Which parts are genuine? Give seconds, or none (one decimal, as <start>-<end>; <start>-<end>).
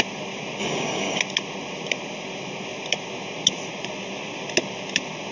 0.0-0.6; 1.2-5.3